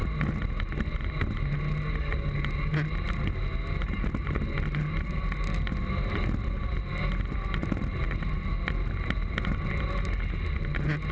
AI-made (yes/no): no